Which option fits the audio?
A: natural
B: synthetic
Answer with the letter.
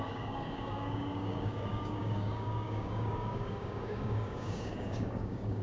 B